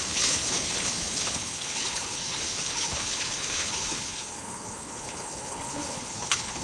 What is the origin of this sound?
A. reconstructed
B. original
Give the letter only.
A